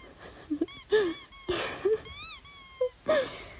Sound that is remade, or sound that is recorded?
recorded